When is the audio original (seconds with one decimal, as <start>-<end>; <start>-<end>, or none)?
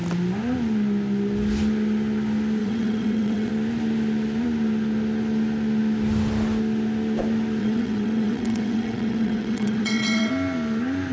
0.0-2.6; 3.5-7.6; 10.3-11.1